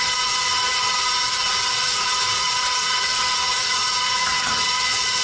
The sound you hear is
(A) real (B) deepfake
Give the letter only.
B